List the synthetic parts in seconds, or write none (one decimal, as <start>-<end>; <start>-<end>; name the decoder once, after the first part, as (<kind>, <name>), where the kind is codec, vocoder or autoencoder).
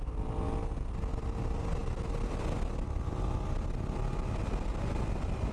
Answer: none